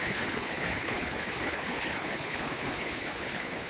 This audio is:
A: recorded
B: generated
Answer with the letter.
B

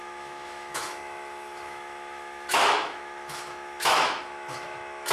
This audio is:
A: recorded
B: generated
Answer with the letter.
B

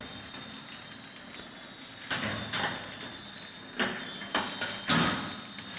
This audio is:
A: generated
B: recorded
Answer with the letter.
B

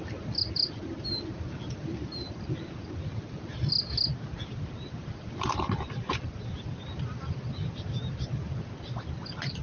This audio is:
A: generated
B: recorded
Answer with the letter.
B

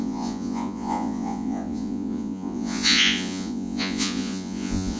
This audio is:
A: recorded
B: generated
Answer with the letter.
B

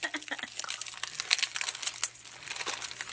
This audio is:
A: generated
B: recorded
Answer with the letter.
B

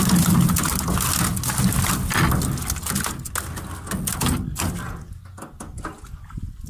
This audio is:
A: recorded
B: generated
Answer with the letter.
A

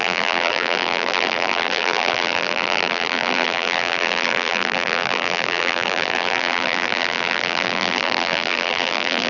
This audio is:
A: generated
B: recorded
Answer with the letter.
A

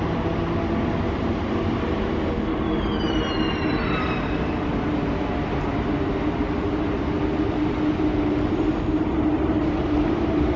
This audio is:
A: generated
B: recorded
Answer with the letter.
B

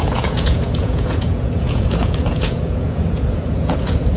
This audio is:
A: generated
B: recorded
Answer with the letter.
A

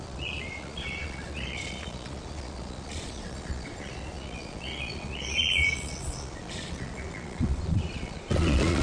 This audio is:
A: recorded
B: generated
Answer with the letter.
B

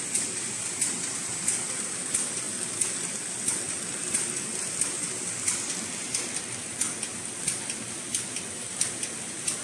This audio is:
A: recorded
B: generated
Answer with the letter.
A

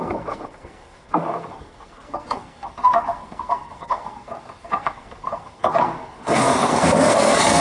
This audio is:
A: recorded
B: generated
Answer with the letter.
B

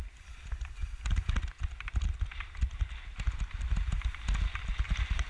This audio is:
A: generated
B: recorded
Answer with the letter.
B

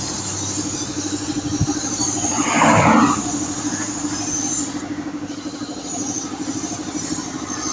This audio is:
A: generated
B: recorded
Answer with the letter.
B